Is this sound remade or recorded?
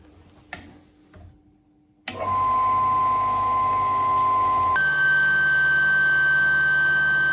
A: recorded